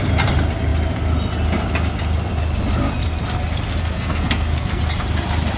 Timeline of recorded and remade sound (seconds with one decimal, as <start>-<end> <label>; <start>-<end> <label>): 0.0-3.8 recorded; 3.8-4.8 remade; 4.8-5.6 recorded